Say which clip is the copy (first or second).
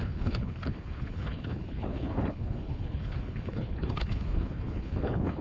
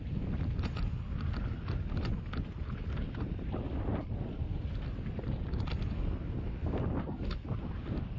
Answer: first